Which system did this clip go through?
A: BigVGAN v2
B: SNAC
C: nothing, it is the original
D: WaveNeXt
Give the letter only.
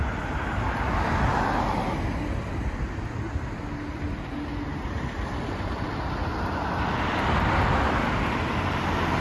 C